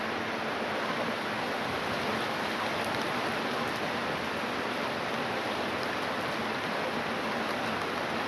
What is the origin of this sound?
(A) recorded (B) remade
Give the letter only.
A